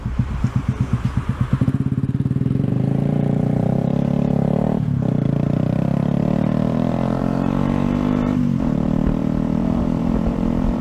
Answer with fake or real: fake